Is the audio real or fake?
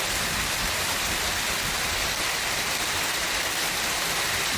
fake